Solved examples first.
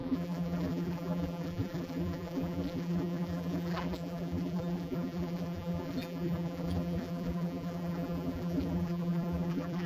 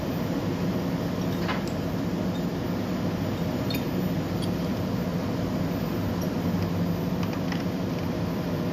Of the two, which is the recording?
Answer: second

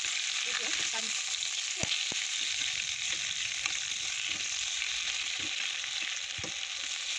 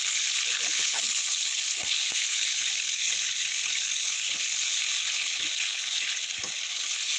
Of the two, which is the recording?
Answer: first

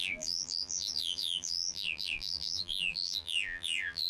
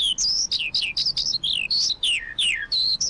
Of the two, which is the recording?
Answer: second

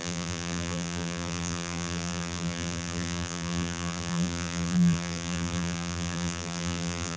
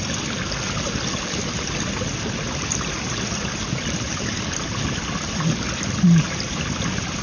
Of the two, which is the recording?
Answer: second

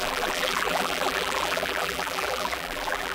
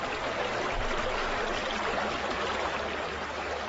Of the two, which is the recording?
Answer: second